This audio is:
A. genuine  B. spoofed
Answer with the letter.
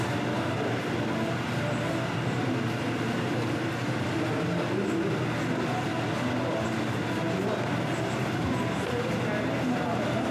A